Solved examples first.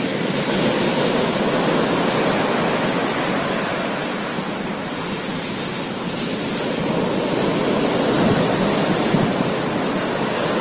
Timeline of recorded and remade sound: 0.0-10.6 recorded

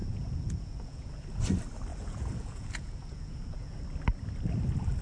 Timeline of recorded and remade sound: 0.0-1.4 remade; 1.4-1.9 recorded; 1.9-3.8 remade; 3.8-5.0 recorded

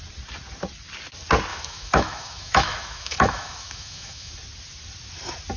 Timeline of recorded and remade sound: 0.0-1.5 recorded; 1.5-4.3 remade; 4.3-5.6 recorded

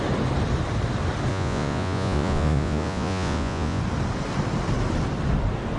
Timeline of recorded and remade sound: 0.0-1.3 recorded; 1.3-3.8 remade; 3.8-5.8 recorded

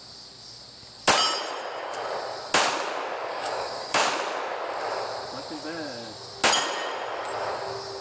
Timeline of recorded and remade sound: 0.0-3.3 recorded; 3.3-4.0 remade; 4.0-8.0 recorded

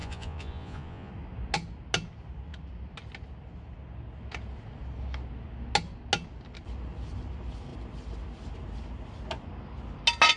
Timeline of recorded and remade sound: 0.0-1.1 remade; 1.1-10.4 recorded